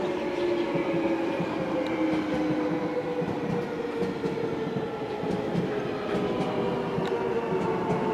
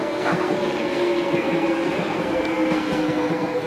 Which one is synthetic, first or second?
second